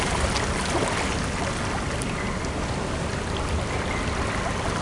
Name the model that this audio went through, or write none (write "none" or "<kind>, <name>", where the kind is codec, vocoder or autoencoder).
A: none